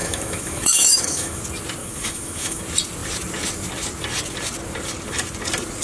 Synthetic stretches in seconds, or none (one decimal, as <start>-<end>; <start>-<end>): 0.0-1.4; 1.8-2.6

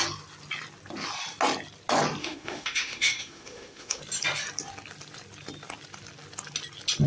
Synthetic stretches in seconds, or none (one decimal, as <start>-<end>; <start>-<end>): 2.2-4.0